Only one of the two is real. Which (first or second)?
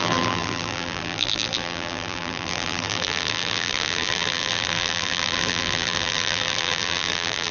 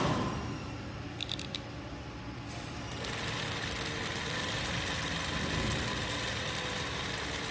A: second